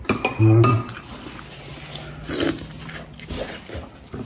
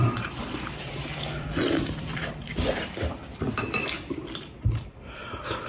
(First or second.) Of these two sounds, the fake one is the second